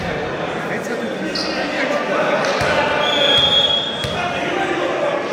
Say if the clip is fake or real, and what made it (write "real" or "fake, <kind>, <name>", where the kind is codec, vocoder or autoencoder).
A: real